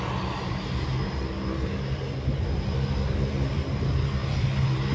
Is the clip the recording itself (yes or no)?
yes